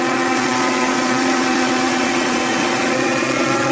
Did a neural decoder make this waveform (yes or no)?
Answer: yes